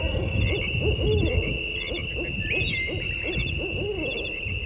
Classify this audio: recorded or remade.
recorded